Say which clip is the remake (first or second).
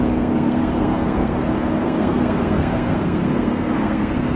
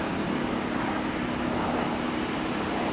first